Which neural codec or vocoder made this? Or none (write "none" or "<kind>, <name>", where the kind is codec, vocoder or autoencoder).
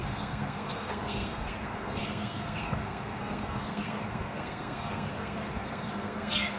codec, SNAC